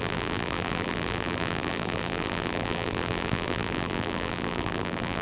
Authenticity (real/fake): fake